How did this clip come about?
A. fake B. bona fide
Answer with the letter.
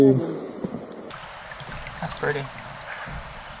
B